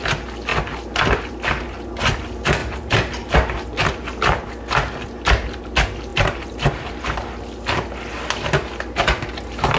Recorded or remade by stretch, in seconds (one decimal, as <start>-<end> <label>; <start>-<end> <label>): 0.0-0.5 recorded; 0.5-1.3 remade; 1.3-2.6 recorded; 2.6-4.2 remade; 4.2-6.1 recorded; 6.1-6.9 remade; 6.9-9.8 recorded